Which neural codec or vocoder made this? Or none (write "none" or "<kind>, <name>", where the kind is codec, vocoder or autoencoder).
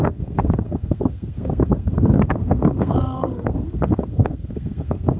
codec, SNAC